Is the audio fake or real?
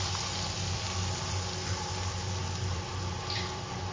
fake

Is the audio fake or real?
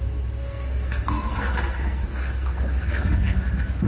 fake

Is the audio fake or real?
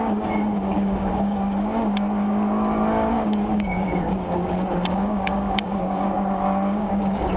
fake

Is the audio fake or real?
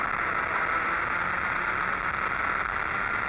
real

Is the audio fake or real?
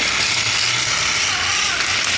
real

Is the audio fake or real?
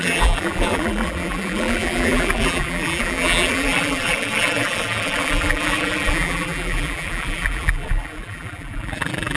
fake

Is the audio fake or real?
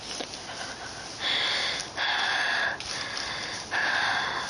real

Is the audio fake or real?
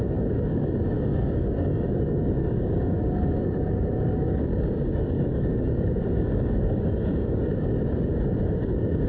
fake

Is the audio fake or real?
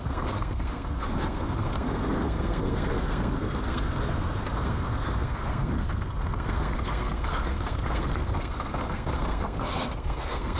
fake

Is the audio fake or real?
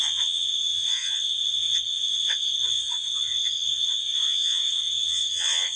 fake